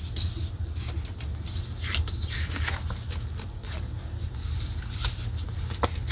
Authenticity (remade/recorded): recorded